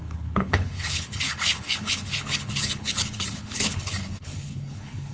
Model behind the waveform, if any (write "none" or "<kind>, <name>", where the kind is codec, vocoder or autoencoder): codec, HILCodec